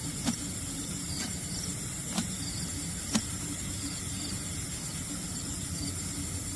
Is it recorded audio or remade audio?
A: remade